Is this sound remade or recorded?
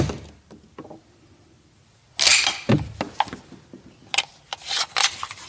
recorded